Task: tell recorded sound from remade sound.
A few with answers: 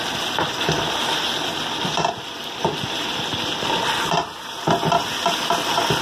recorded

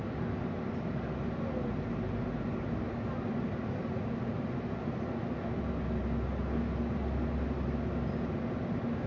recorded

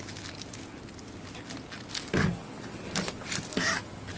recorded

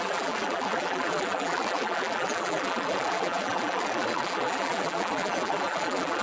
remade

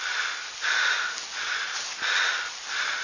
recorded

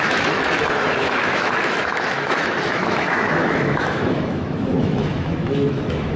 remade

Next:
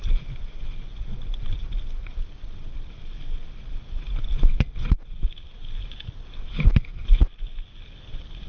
recorded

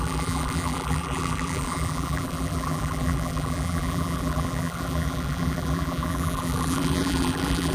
remade